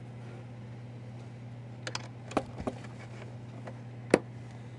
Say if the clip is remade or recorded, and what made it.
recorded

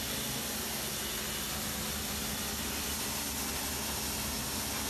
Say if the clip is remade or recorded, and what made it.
recorded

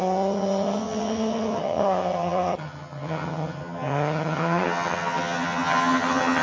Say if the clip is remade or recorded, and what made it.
remade, vocoder, HiFi-GAN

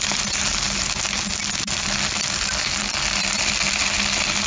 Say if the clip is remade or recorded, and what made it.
recorded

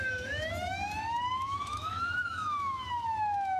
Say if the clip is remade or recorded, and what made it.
remade, autoencoder, DAC-VAE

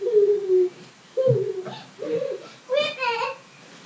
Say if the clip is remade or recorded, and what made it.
recorded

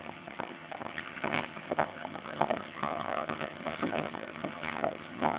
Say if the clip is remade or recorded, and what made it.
remade, vocoder, HiFi-GAN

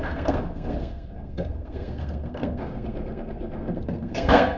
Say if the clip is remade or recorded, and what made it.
remade, codec, SNAC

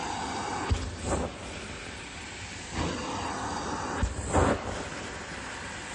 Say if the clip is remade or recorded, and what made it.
recorded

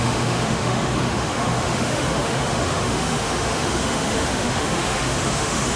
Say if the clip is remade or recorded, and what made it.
remade, autoencoder, DAC-VAE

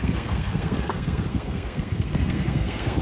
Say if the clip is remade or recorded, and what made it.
remade, codec, SNAC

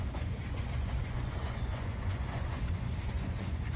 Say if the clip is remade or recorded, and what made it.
remade, vocoder, Vocos